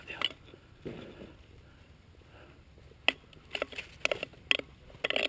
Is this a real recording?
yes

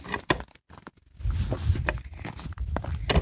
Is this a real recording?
yes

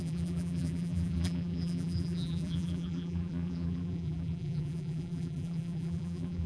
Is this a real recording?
no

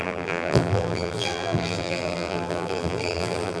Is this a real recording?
no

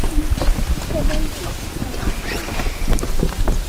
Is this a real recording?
yes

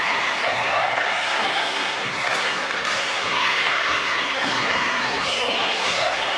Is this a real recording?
no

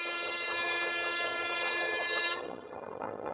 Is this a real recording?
no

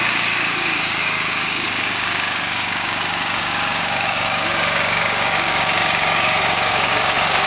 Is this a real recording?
no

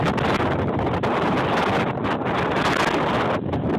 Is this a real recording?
yes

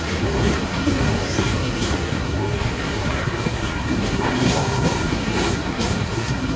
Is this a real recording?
no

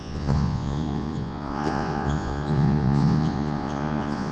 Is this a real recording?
no